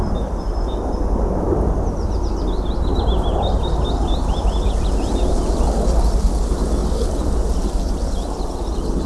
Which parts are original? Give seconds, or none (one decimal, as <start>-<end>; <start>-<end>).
0.0-4.0; 4.7-6.8; 7.6-9.1